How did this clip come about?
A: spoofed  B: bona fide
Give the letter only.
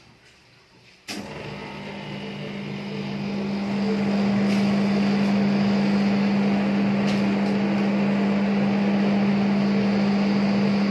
B